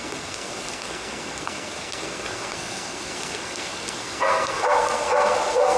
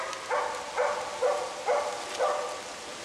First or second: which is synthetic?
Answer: first